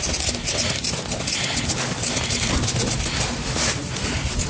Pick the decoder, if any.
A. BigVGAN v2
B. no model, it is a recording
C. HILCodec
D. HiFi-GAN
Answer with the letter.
B